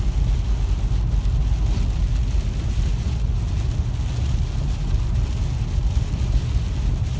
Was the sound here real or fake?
real